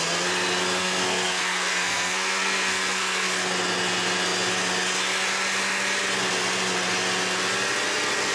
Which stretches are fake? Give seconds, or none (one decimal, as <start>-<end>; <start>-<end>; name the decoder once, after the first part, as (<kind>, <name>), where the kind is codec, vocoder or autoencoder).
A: 0.8-3.3 (codec, SNAC)

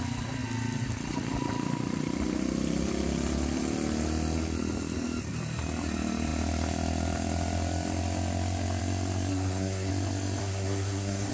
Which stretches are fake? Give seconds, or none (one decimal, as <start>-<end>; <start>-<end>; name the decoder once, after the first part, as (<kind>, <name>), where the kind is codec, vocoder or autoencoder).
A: 9.3-9.9 (codec, SNAC); 10.4-11.3

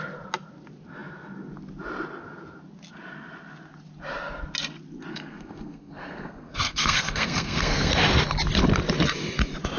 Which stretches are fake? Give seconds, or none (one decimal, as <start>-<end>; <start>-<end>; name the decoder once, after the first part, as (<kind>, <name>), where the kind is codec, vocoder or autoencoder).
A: 5.1-7.9 (codec, SNAC)

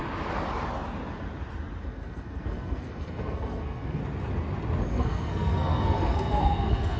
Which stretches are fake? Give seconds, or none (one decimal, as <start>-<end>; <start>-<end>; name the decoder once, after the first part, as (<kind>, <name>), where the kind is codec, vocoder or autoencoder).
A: 1.8-4.0 (codec, SNAC); 4.9-7.0

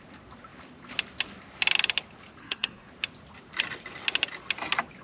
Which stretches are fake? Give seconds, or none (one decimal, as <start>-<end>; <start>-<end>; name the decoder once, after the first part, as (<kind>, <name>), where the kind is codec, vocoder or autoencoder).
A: 2.4-2.9 (codec, SNAC)

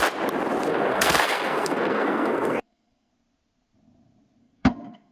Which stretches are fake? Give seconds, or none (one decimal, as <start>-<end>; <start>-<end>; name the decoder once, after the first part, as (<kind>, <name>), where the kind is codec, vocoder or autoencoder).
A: 0.7-3.1 (codec, SNAC); 4.4-5.1